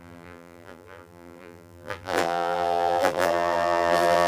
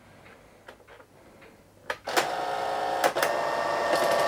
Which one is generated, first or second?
first